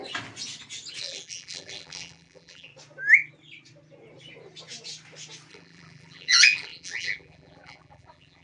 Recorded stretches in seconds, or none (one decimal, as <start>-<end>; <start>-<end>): 0.0-1.0; 2.7-5.5